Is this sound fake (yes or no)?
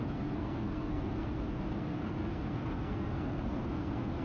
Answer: yes